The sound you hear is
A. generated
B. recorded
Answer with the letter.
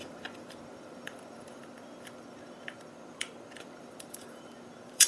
A